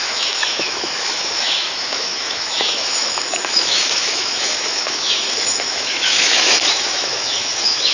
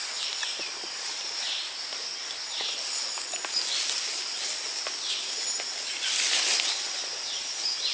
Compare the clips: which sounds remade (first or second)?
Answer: first